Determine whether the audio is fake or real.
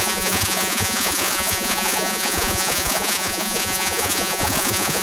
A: fake